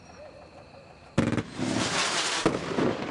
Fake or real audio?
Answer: real